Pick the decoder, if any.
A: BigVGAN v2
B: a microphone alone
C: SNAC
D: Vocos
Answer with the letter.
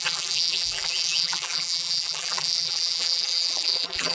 A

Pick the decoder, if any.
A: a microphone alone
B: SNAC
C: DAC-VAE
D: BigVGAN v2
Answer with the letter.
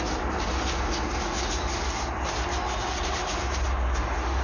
A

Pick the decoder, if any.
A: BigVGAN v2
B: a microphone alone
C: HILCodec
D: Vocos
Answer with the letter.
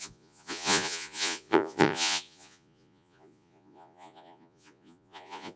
D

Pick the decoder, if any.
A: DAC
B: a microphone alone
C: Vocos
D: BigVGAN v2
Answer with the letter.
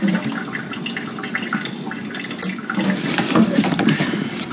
B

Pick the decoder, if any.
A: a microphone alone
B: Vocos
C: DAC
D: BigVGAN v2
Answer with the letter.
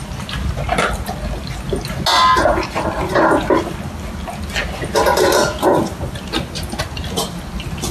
A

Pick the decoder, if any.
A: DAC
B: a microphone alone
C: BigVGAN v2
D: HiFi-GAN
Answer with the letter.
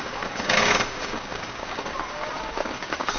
A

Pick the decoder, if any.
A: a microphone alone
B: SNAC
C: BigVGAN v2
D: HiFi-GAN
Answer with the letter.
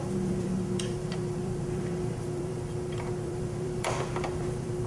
C